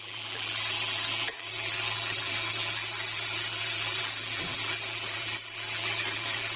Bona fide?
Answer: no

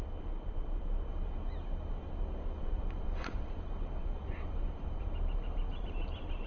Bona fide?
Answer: no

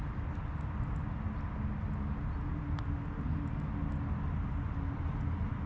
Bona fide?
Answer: yes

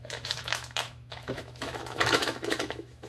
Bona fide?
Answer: no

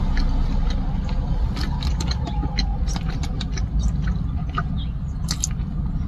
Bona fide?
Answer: yes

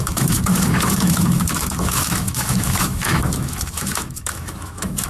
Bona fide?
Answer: no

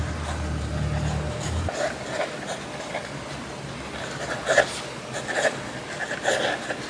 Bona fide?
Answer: yes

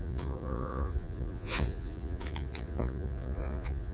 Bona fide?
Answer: no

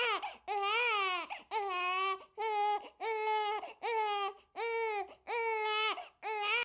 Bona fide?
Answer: yes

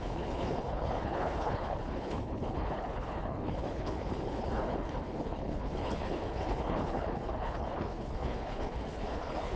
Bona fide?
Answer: no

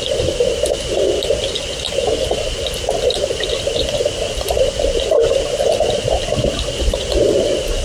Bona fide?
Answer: yes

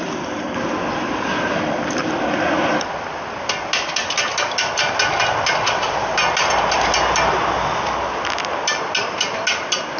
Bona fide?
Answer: yes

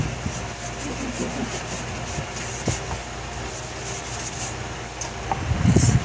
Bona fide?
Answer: yes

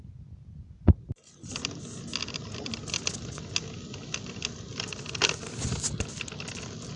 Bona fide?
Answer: yes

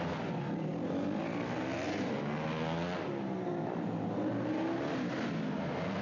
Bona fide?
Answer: yes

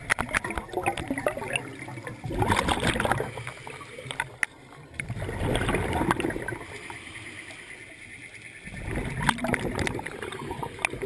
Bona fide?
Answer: yes